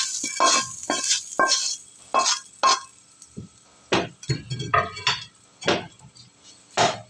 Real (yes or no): yes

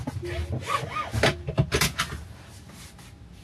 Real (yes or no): yes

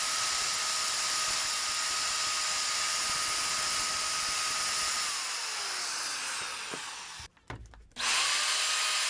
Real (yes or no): yes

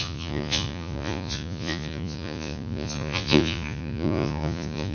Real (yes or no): no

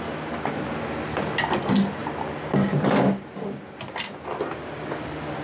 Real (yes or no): yes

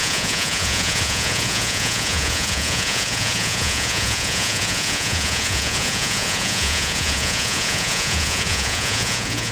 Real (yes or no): no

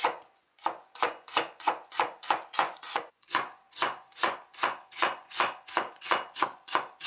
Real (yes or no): no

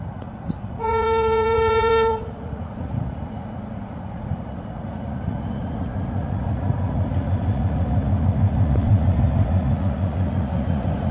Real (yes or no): no